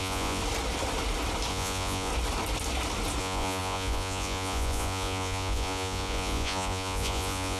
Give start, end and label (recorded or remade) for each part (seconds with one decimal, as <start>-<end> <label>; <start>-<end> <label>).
0.0-0.4 remade; 0.4-1.5 recorded; 1.5-2.1 remade; 2.1-3.2 recorded; 3.2-7.6 remade